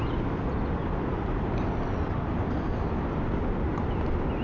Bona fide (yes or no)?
yes